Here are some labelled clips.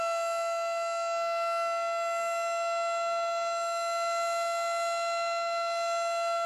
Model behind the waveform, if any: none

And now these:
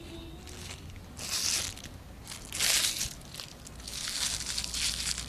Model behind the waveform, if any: none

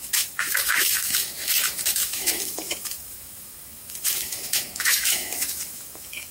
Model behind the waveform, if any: autoencoder, DAC-VAE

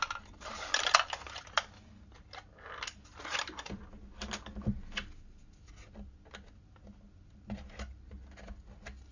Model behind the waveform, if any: none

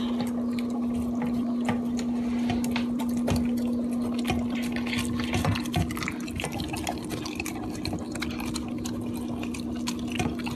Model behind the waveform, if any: none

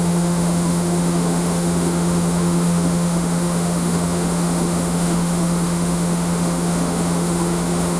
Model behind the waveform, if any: autoencoder, DAC-VAE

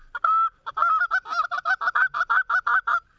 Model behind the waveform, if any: none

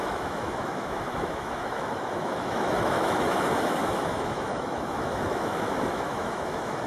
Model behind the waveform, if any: autoencoder, DAC-VAE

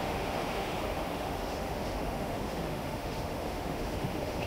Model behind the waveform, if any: autoencoder, DAC-VAE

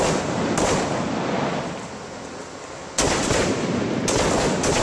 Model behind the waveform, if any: none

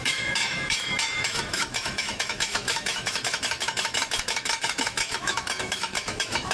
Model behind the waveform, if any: autoencoder, DAC-VAE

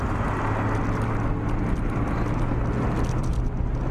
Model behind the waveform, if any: none